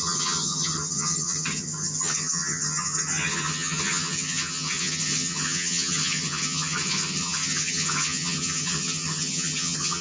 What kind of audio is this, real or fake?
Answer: fake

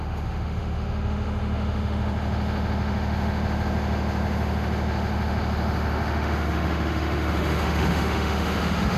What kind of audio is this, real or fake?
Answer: fake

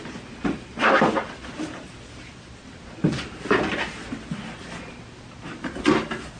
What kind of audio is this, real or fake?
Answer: real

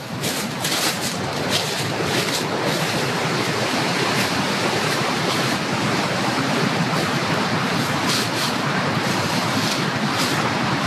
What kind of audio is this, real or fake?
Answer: fake